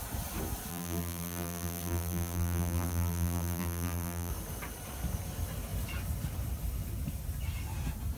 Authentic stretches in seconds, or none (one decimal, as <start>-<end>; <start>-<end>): 0.0-0.7; 4.3-8.2